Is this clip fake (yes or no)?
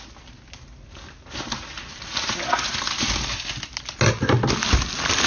no